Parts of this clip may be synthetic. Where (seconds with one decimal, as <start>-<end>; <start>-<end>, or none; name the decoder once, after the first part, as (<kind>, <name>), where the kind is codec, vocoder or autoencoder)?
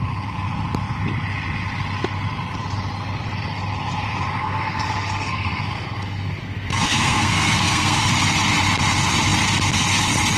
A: 4.4-8.1 (codec, SNAC)